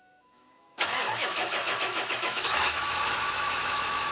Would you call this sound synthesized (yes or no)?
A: yes